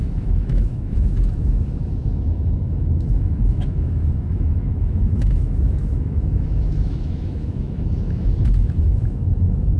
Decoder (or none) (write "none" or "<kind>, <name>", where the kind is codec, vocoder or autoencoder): autoencoder, DAC-VAE